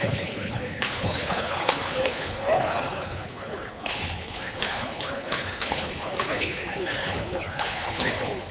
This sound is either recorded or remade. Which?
remade